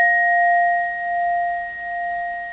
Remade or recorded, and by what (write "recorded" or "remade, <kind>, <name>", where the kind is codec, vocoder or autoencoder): recorded